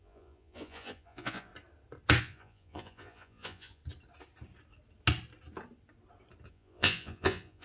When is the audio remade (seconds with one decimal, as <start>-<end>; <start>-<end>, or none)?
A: 0.0-1.5; 2.2-3.8; 6.5-7.6